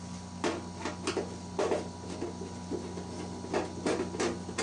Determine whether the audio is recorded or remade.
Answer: recorded